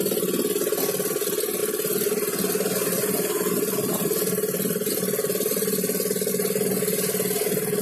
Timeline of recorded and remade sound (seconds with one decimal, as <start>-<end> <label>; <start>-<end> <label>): 0.0-1.6 recorded; 1.6-6.3 remade; 6.3-7.8 recorded